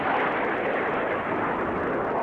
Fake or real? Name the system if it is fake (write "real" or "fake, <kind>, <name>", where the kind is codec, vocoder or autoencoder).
real